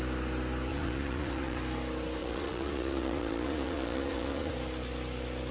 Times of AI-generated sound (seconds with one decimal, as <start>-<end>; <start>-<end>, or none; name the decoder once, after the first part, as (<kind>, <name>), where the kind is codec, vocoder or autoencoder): 0.7-1.6 (vocoder, Vocos); 2.2-4.5